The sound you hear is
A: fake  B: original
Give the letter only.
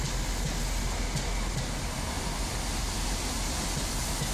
B